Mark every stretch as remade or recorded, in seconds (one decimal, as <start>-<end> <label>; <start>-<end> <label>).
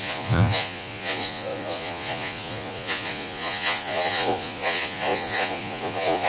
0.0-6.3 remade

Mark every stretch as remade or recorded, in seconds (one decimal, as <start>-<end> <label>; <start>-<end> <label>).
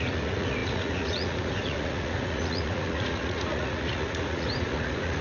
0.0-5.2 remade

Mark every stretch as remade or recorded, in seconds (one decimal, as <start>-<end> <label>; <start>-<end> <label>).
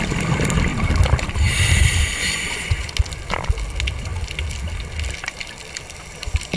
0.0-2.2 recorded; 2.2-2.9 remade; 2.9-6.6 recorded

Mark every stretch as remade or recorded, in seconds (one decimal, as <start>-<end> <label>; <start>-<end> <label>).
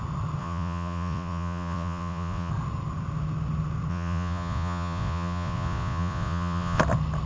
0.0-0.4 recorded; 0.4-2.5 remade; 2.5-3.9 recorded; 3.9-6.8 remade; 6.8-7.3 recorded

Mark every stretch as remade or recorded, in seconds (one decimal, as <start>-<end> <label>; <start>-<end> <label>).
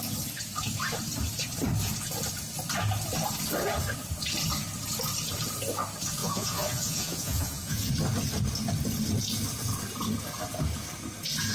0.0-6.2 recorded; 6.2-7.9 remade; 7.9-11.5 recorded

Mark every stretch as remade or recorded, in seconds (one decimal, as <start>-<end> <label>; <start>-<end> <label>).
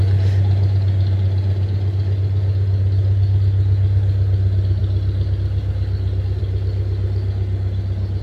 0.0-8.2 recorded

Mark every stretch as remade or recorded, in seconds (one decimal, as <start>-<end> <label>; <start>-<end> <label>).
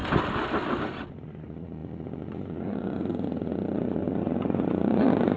0.0-1.2 recorded; 1.2-5.4 remade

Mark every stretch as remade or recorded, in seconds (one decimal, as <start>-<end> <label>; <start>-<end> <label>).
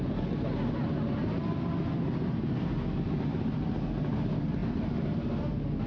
0.0-5.9 recorded